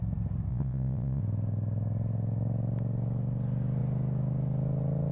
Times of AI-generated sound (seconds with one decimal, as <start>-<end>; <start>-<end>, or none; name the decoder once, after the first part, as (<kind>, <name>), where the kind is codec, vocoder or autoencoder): 0.5-1.2 (vocoder, Vocos)